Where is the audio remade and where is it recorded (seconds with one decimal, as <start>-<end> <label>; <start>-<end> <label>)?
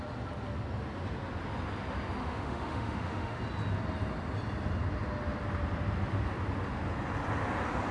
0.0-2.2 recorded; 2.2-3.4 remade; 3.4-7.9 recorded